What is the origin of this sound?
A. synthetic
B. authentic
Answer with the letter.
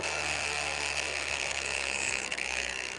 A